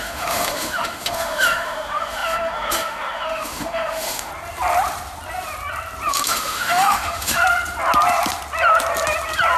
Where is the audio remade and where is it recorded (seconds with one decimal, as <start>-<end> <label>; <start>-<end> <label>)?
0.0-4.3 remade; 4.3-6.1 recorded; 6.1-7.4 remade; 7.4-9.6 recorded

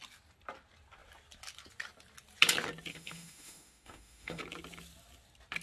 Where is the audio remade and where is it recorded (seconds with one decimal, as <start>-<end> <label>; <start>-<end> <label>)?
0.0-2.9 recorded; 2.9-4.4 remade; 4.4-5.6 recorded

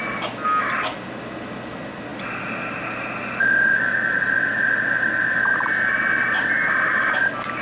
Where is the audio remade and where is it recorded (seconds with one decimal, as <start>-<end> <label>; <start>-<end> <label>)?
0.0-7.6 recorded